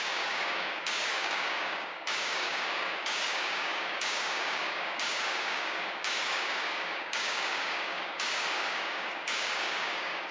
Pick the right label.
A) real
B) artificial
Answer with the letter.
B